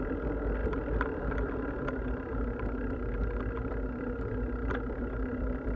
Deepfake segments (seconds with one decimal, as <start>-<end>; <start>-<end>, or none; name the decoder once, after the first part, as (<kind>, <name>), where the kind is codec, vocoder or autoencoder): 4.6-5.8 (vocoder, BigVGAN v2)